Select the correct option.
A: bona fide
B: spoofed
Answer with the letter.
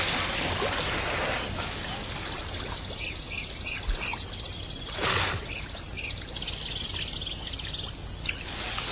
A